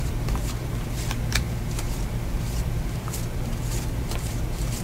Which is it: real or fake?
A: fake